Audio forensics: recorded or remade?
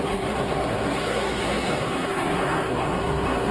remade